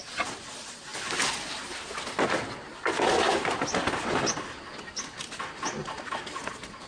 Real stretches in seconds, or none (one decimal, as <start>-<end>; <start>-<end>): 0.0-6.9